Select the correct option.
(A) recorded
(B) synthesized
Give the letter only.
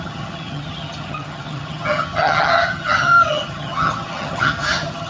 B